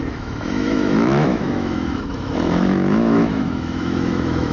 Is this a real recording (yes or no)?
no